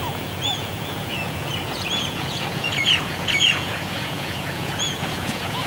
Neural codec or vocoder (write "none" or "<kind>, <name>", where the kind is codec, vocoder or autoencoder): vocoder, Vocos